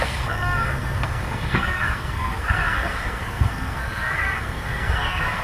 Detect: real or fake fake